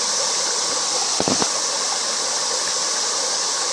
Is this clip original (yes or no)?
yes